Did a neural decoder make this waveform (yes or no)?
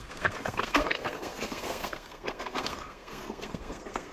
yes